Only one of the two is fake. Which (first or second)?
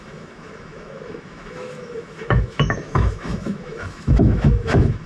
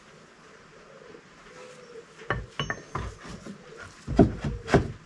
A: first